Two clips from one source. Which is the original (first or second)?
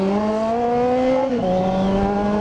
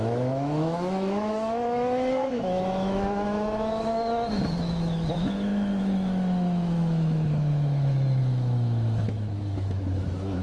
first